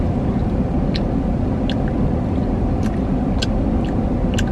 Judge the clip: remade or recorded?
recorded